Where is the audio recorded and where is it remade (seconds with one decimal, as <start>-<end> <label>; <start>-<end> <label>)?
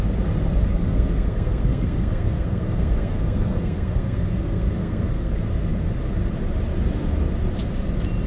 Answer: 0.0-0.7 recorded; 0.7-5.3 remade; 5.3-8.3 recorded